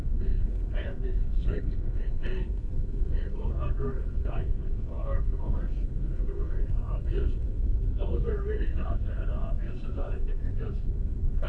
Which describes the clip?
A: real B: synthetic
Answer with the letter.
B